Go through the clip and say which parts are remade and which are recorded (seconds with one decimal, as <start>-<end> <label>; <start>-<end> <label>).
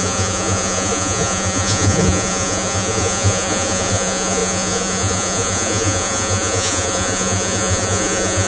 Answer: 0.0-8.5 remade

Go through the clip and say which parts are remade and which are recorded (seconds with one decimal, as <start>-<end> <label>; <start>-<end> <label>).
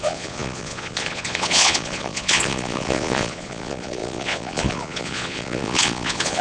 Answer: 0.0-6.4 remade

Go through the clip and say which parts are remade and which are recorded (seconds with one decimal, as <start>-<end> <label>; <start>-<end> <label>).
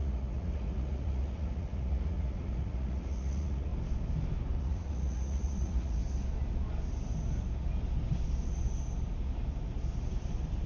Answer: 0.0-3.7 remade; 3.7-4.6 recorded; 4.6-6.0 remade; 6.0-10.7 recorded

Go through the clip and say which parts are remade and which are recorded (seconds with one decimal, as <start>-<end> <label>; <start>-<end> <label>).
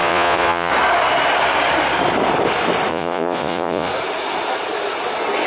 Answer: 0.0-0.7 remade; 0.7-2.9 recorded; 2.9-3.9 remade; 3.9-5.5 recorded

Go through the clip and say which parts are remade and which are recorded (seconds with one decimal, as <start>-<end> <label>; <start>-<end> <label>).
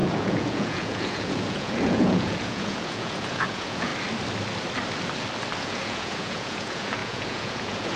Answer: 0.0-3.9 remade; 3.9-5.6 recorded; 5.6-8.0 remade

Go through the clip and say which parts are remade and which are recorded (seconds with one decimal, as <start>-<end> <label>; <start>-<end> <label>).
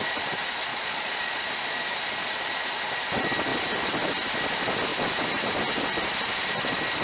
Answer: 0.0-0.7 recorded; 0.7-1.5 remade; 1.5-7.0 recorded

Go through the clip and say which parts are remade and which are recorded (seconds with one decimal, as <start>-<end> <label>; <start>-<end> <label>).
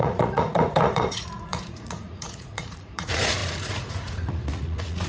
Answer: 0.0-5.1 remade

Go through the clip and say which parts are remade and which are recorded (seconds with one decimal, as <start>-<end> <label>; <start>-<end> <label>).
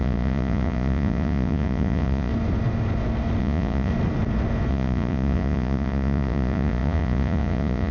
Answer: 0.0-2.3 remade; 2.3-3.4 recorded; 3.4-3.9 remade; 3.9-4.7 recorded; 4.7-7.9 remade